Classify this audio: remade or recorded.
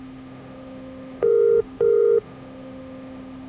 remade